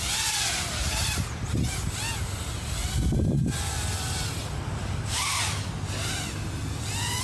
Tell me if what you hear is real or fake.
real